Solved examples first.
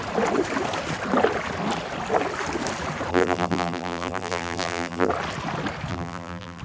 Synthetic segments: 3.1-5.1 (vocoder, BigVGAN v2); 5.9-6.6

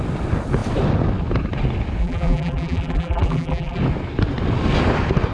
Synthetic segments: 2.0-3.8 (vocoder, BigVGAN v2)

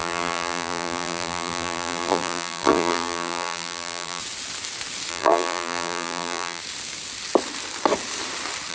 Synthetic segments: 0.0-4.2 (vocoder, BigVGAN v2); 5.1-6.6

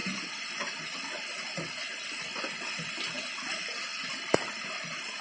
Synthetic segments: 0.0-0.8 (vocoder, BigVGAN v2)